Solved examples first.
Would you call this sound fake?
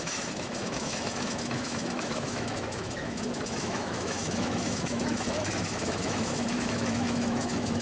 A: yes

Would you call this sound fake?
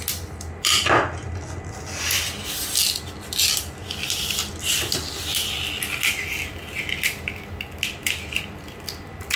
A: no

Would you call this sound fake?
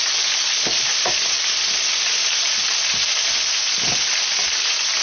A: no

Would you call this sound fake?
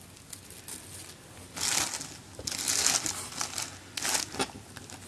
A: no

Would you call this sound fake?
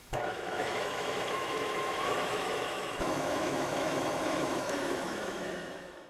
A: yes